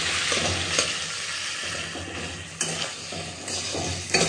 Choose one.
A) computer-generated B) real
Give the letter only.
B